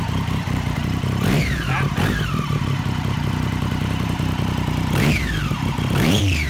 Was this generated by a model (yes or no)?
yes